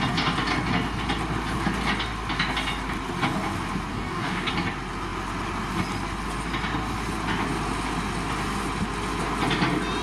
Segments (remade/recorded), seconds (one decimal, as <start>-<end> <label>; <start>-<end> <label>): 0.0-3.9 recorded; 3.9-4.5 remade; 4.5-10.0 recorded